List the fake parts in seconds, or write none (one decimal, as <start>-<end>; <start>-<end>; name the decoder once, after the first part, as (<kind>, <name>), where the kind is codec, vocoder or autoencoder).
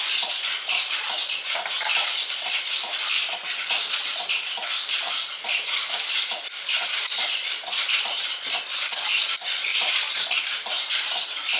none